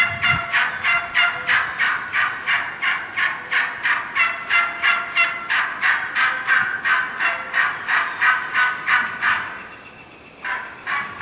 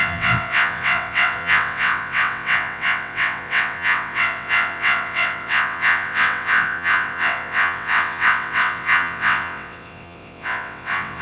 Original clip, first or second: first